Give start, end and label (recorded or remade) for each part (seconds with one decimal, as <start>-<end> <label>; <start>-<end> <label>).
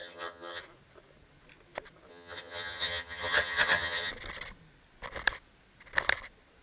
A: 0.0-0.6 remade; 0.6-2.1 recorded; 2.1-4.1 remade; 4.1-6.6 recorded